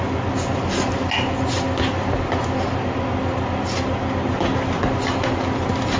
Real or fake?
real